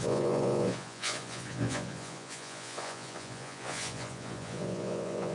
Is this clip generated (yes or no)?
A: yes